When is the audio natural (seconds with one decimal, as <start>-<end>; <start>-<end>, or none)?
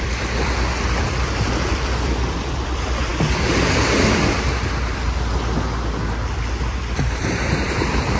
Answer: 3.1-6.8